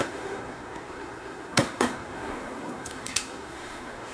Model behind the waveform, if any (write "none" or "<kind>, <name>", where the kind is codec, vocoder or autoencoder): codec, SNAC